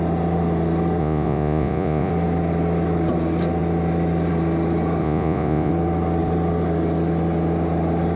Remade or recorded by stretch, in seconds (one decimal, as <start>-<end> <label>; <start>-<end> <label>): 0.0-1.0 recorded; 1.0-2.1 remade; 2.1-5.0 recorded; 5.0-5.7 remade; 5.7-8.2 recorded